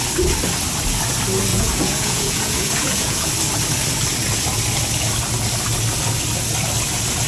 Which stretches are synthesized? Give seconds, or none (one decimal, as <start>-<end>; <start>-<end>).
1.5-3.3

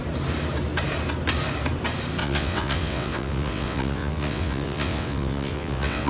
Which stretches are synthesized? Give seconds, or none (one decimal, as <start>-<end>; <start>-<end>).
2.2-6.1